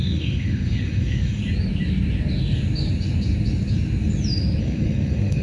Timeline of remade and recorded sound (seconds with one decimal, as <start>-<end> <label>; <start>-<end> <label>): 0.0-1.4 remade; 1.4-4.6 recorded; 4.6-5.4 remade

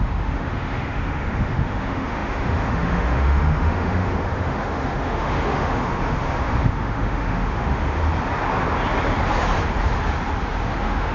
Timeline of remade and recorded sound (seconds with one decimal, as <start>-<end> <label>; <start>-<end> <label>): 0.0-8.0 remade; 8.0-10.5 recorded; 10.5-11.1 remade

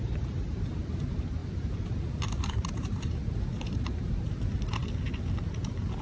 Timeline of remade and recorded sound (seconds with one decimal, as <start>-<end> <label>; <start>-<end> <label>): 0.0-4.8 remade; 4.8-5.6 recorded; 5.6-6.0 remade

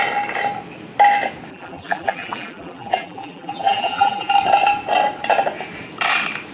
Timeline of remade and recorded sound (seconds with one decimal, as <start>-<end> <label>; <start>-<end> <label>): 0.0-1.5 recorded; 1.5-4.3 remade; 4.3-6.5 recorded

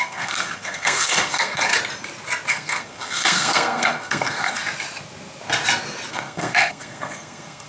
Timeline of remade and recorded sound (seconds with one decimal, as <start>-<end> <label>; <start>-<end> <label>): 0.0-1.7 remade; 1.7-2.5 recorded; 2.5-4.6 remade; 4.6-6.1 recorded; 6.1-7.7 remade

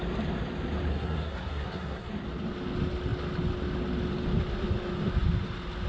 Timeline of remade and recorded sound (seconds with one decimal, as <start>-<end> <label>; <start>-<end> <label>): 0.0-0.9 recorded; 0.9-2.1 remade; 2.1-5.9 recorded

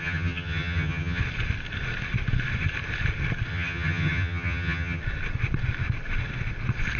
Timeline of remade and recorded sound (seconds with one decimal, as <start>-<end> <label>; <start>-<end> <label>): 0.0-1.2 remade; 1.2-3.5 recorded; 3.5-5.0 remade; 5.0-7.0 recorded